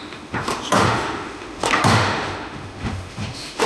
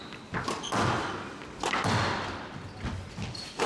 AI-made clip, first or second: first